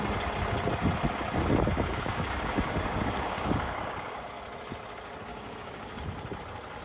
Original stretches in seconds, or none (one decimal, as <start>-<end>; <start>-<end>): 0.0-1.9; 4.2-5.3; 6.0-6.8